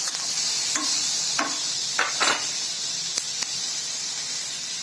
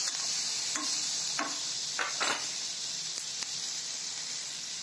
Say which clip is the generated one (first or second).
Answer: second